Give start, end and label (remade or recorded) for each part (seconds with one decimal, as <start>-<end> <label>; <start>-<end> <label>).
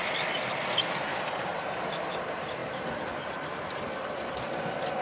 0.0-5.0 recorded